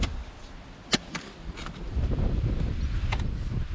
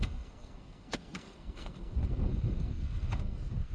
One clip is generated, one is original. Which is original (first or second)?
first